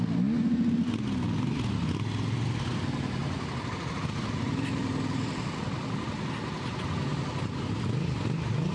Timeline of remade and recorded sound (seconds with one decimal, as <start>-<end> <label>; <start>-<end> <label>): 0.0-8.7 recorded